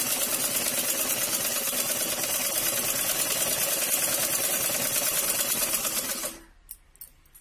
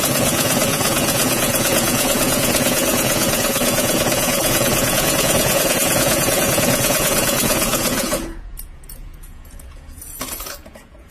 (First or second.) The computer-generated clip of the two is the second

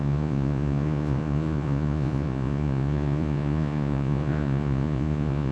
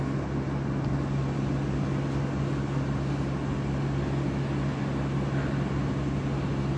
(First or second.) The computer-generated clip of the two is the first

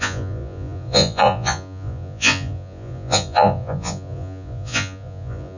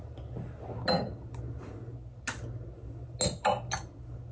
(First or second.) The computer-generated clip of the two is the first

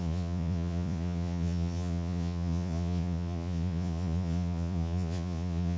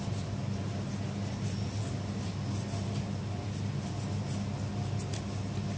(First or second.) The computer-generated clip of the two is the first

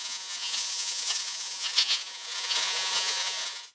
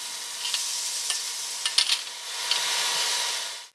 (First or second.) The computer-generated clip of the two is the first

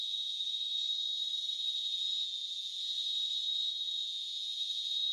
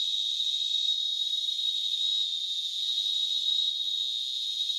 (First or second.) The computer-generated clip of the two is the first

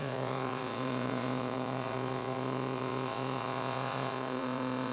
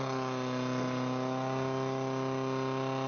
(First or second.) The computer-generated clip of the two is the first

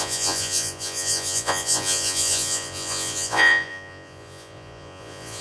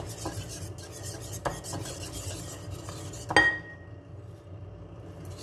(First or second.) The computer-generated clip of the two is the first